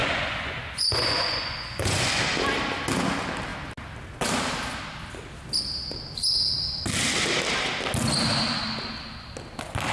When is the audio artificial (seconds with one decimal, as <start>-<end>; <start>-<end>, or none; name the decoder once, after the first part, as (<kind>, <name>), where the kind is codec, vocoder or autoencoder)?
0.0-2.2 (vocoder, Vocos)